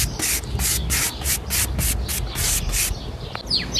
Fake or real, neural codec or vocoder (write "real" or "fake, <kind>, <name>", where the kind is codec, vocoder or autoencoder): real